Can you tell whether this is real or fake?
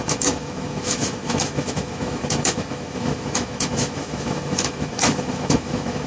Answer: fake